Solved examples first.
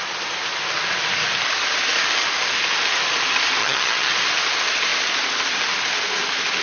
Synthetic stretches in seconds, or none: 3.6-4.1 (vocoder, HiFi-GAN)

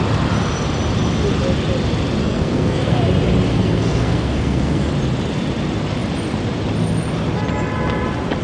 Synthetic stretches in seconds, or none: 2.2-3.0 (codec, SNAC); 3.5-4.9

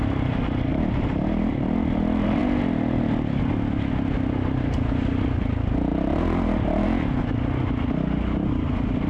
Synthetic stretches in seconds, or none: none

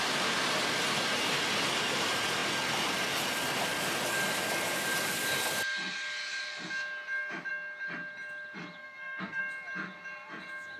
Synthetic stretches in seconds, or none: 8.8-9.4 (codec, SNAC)